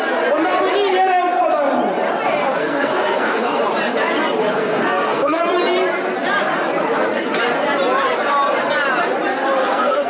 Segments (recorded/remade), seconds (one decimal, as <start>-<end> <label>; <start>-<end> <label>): 0.0-2.4 recorded; 2.4-3.6 remade; 3.6-4.4 recorded; 4.4-5.4 remade; 5.4-9.6 recorded; 9.6-10.1 remade